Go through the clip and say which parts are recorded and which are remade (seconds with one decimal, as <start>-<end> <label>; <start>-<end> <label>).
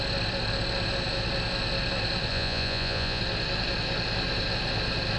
0.0-2.3 recorded; 2.3-3.2 remade; 3.2-5.2 recorded